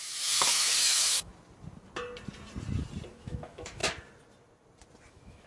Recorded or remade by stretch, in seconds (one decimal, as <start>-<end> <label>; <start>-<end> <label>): 0.0-1.3 remade; 1.3-3.1 recorded; 3.1-3.8 remade; 3.8-5.1 recorded; 5.1-5.5 remade